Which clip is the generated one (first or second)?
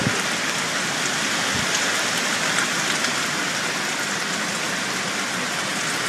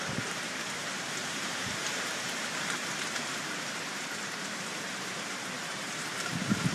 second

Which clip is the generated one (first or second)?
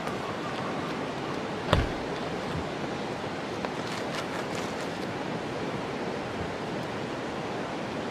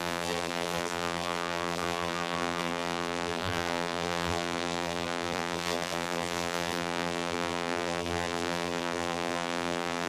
second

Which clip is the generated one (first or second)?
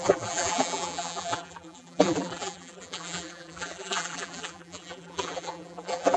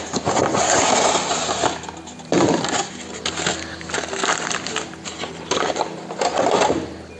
first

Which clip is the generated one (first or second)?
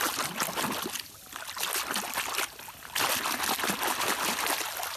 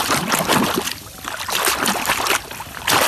second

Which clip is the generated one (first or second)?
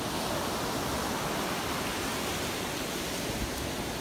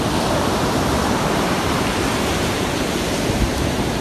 second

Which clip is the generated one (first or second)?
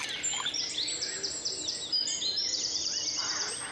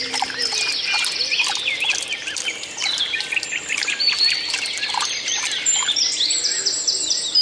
second